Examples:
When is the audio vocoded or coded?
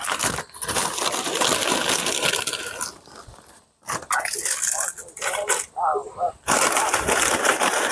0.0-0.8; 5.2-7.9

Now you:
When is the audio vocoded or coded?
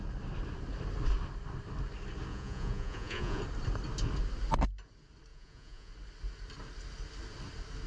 2.3-3.4; 5.3-5.9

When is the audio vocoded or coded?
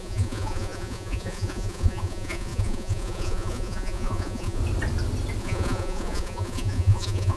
0.0-4.6; 5.4-7.4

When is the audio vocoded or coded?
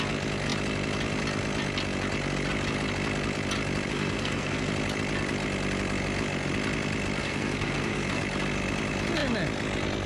3.9-4.7; 7.2-8.2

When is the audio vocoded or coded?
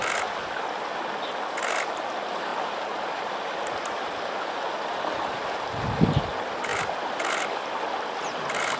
6.7-7.7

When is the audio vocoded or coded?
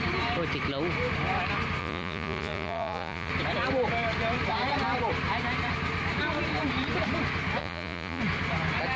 1.8-3.3; 7.6-8.2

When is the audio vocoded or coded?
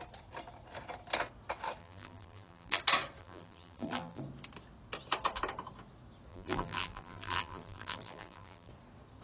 1.8-2.8; 3.2-4.2; 6.3-8.7